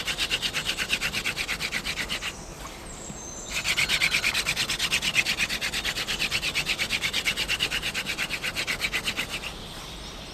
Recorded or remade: recorded